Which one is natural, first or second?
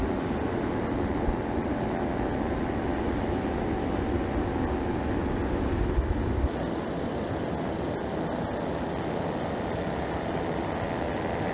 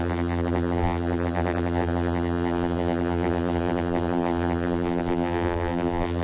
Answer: first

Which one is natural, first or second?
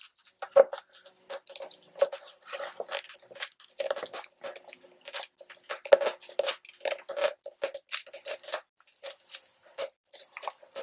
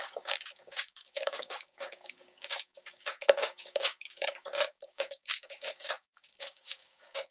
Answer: first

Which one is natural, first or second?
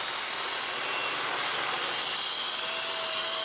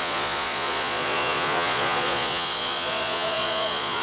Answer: first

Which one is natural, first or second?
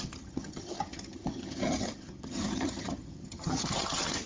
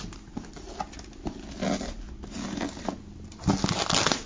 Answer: second